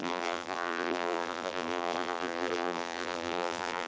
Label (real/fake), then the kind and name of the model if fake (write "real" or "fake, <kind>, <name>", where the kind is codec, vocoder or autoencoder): fake, vocoder, BigVGAN v2